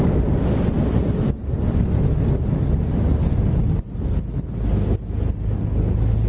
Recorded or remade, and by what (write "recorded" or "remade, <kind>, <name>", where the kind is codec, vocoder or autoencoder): recorded